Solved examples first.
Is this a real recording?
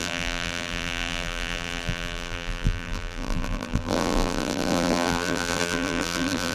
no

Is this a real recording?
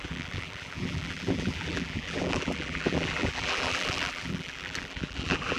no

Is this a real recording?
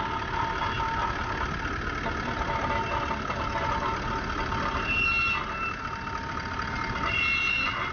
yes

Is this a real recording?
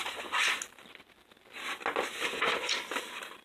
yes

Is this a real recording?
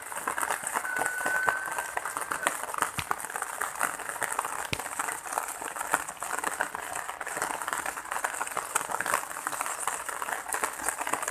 yes